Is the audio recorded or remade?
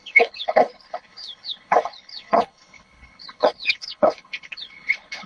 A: remade